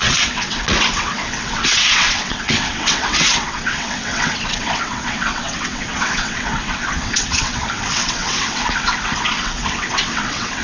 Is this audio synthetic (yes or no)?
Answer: yes